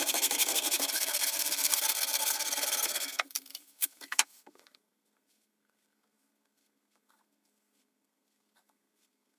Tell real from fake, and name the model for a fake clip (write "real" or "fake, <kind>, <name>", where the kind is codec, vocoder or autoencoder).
fake, codec, SNAC